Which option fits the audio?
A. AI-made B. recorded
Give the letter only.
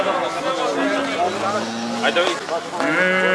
B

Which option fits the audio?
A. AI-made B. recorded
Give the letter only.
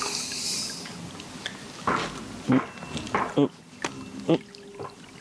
B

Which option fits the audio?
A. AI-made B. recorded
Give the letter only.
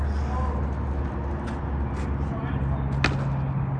B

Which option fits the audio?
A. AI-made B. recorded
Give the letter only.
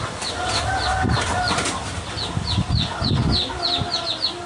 B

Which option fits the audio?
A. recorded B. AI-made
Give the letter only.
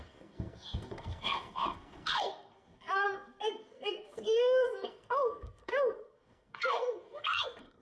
B